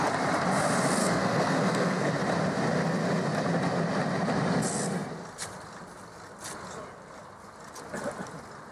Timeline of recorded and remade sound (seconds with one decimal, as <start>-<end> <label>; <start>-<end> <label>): 0.0-1.0 recorded; 1.0-2.1 remade; 2.1-8.7 recorded